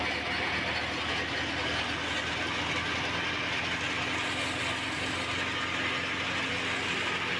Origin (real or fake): real